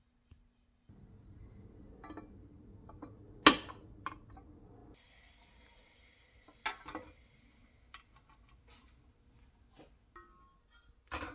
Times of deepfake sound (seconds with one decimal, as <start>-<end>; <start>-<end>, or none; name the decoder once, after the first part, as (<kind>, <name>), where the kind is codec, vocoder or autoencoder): none